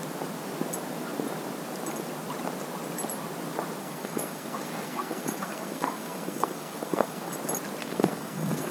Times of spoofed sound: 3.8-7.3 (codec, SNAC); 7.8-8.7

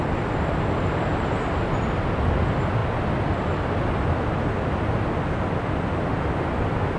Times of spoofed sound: none